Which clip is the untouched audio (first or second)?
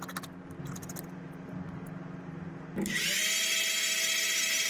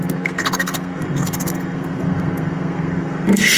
first